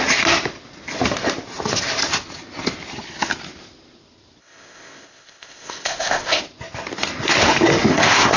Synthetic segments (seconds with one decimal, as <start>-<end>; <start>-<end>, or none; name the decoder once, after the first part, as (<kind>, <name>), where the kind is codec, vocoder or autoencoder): 4.4-6.4 (codec, ZipCodec); 7.9-8.4